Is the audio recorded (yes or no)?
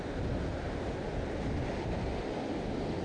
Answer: yes